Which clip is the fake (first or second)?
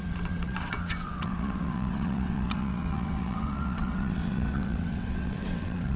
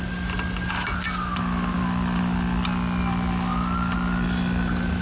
first